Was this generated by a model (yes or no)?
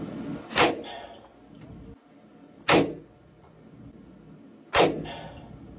no